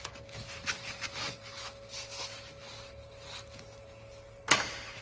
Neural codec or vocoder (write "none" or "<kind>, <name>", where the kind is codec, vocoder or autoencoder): none